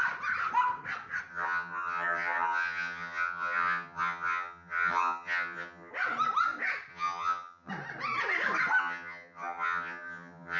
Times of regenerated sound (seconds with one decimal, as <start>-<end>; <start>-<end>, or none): 1.3-5.9; 6.9-7.7; 8.8-10.6